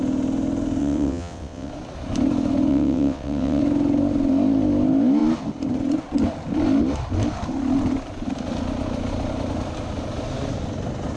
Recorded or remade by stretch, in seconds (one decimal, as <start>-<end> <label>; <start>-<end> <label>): 0.0-0.8 recorded; 0.8-1.7 remade; 1.7-2.7 recorded; 2.7-3.6 remade; 3.6-11.2 recorded